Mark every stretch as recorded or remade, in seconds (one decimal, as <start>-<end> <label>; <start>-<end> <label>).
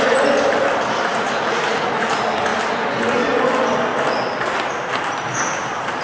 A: 0.0-1.1 recorded; 1.1-2.1 remade; 2.1-6.0 recorded